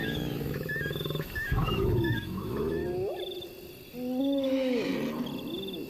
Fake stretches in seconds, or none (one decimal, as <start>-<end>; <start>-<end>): 0.0-2.8; 4.2-4.9